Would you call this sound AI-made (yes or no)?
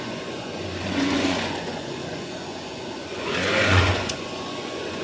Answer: yes